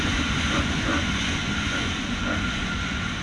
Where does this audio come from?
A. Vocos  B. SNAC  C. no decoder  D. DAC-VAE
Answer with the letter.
A